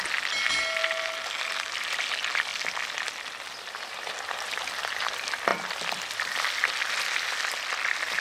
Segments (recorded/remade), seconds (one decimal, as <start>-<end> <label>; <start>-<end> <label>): 0.0-8.2 recorded